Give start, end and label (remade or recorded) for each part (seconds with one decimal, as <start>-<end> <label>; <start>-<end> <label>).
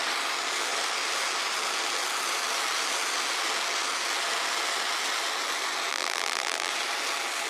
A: 0.0-5.9 recorded; 5.9-6.7 remade; 6.7-7.5 recorded